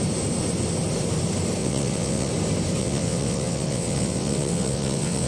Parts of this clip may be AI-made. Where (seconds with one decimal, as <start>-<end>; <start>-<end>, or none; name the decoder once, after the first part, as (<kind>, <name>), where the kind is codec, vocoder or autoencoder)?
1.6-2.3 (vocoder, WaveNeXt); 2.8-5.3